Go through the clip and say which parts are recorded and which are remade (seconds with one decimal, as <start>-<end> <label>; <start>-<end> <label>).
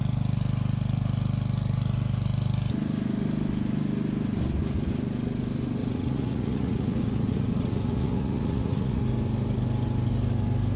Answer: 0.0-5.8 recorded; 5.8-9.0 remade; 9.0-10.8 recorded